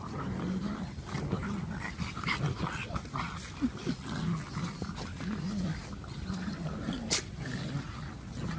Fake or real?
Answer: real